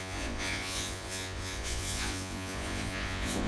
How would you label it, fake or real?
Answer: fake